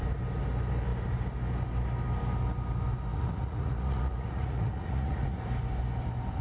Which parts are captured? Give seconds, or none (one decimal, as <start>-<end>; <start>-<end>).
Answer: 0.0-3.1; 5.4-6.4